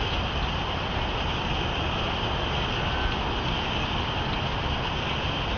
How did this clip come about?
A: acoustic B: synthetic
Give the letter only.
A